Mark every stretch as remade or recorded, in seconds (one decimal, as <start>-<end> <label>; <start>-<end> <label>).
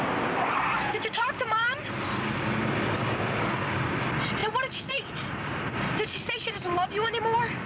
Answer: 0.0-7.7 recorded